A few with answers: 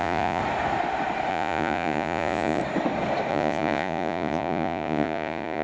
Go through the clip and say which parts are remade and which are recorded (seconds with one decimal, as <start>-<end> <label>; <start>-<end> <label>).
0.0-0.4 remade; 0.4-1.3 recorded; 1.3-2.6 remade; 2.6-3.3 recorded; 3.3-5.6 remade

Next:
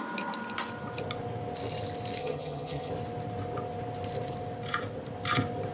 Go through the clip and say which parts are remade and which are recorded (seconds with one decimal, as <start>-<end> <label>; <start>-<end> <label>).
0.0-2.2 recorded; 2.2-2.9 remade; 2.9-5.7 recorded

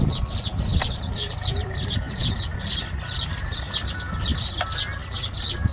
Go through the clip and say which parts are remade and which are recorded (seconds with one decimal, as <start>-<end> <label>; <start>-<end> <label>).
0.0-5.7 recorded

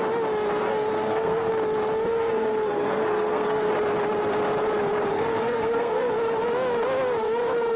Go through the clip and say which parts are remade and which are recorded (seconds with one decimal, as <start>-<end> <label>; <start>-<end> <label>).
0.0-0.6 recorded; 0.6-1.5 remade; 1.5-2.1 recorded; 2.1-3.7 remade; 3.7-5.1 recorded; 5.1-6.1 remade; 6.1-7.8 recorded